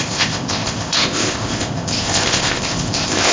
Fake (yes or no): yes